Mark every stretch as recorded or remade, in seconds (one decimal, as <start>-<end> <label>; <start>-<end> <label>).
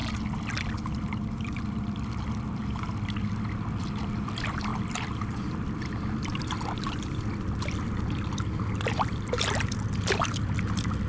0.0-0.5 recorded; 0.5-2.6 remade; 2.6-3.8 recorded; 3.8-11.1 remade